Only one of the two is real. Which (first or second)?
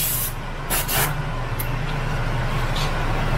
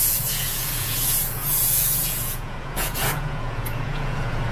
first